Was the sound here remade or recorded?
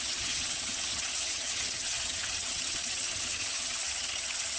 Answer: remade